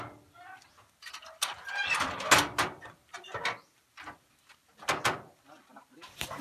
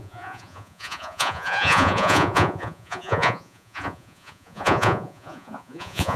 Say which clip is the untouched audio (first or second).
first